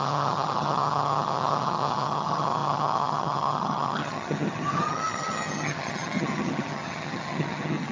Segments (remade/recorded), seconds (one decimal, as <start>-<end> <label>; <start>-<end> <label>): 0.0-7.9 remade